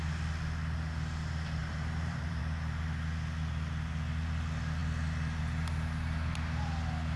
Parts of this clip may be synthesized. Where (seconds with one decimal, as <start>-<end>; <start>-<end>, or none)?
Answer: 1.6-2.4